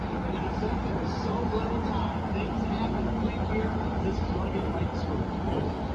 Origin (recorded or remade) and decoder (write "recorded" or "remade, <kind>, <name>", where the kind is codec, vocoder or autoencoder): recorded